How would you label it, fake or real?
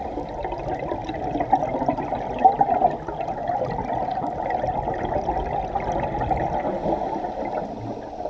real